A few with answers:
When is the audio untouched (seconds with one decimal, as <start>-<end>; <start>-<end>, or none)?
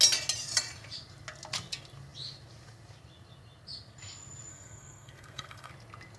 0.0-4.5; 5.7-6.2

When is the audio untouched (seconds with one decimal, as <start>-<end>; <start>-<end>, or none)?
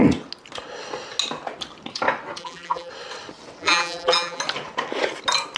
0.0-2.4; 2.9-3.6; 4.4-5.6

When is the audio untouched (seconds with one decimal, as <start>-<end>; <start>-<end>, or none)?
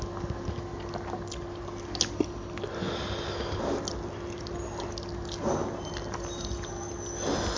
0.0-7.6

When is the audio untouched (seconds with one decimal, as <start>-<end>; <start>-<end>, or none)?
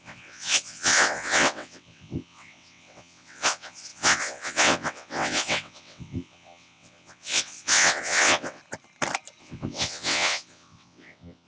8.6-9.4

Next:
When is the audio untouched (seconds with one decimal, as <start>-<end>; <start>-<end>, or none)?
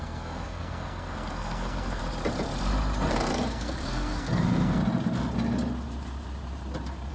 2.0-3.1; 4.8-7.1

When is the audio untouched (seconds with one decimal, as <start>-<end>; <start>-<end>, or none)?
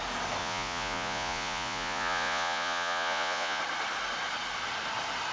0.0-0.4; 3.6-5.3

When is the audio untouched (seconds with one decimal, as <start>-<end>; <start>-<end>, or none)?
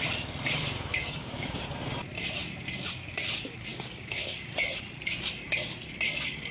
0.0-0.9; 1.6-3.7; 4.4-6.5